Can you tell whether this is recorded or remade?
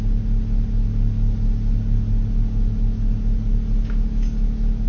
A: recorded